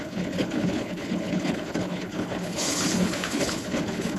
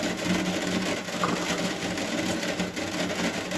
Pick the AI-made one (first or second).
first